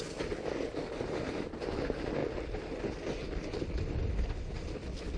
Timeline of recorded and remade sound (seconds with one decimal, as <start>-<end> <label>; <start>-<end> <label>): 0.0-5.2 recorded